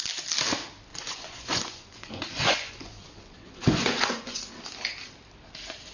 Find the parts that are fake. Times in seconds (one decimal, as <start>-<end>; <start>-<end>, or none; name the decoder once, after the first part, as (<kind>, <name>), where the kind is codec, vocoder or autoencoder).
0.9-4.4 (vocoder, Vocos)